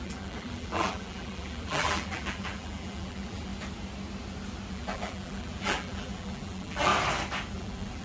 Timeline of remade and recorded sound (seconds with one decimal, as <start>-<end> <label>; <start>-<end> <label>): 0.0-3.5 remade; 3.5-4.7 recorded; 4.7-6.9 remade; 6.9-7.5 recorded; 7.5-8.0 remade